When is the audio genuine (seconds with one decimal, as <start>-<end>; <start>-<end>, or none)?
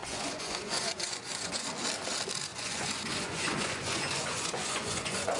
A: 1.7-2.5